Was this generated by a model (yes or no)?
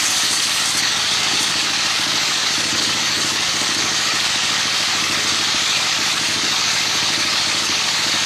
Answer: yes